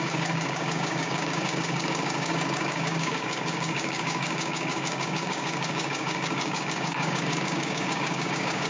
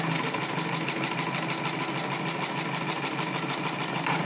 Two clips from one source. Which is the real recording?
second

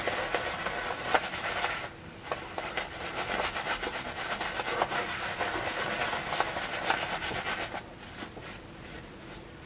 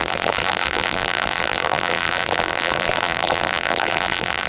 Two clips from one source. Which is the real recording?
first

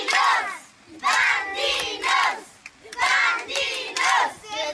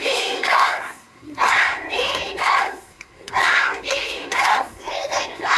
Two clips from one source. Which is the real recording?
first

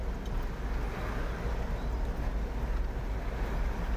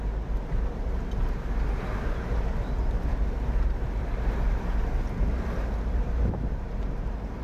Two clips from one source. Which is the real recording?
first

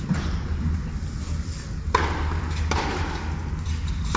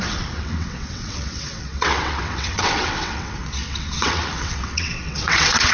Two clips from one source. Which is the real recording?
first